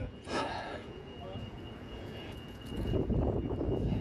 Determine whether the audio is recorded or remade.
remade